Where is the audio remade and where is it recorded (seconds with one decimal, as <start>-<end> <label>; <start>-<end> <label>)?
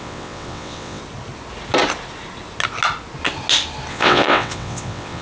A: 0.0-1.0 remade; 1.0-3.9 recorded; 3.9-5.2 remade